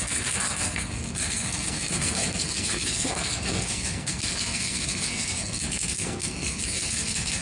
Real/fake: fake